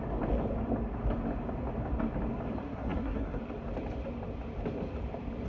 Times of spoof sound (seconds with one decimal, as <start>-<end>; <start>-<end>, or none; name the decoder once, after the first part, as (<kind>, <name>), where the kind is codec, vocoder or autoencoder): 2.6-3.4 (codec, SNAC)

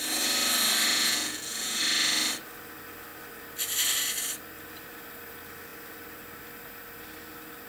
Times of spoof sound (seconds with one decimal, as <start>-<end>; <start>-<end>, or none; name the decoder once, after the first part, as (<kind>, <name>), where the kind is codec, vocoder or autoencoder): 0.9-1.8 (vocoder, Vocos)

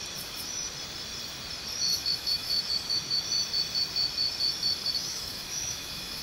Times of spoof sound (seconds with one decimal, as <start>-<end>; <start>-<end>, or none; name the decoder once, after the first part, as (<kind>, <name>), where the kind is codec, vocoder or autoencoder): 1.9-2.7 (autoencoder, DAC-VAE); 5.0-6.2

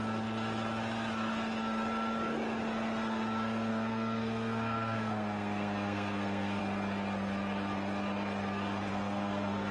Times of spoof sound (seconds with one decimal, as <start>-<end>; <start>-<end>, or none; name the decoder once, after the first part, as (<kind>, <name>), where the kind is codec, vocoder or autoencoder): 3.7-6.6 (codec, SNAC); 8.9-9.7